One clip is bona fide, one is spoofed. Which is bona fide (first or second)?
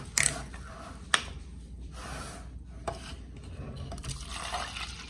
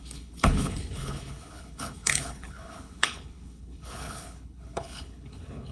first